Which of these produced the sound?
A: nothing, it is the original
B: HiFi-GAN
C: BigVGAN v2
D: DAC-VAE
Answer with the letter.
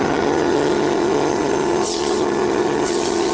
B